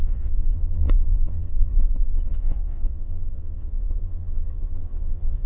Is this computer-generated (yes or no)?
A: yes